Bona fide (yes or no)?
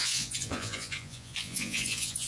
no